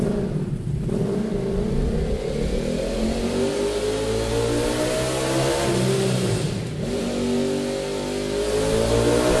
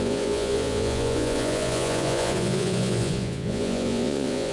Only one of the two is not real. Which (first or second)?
second